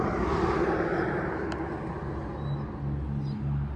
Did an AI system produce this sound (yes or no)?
no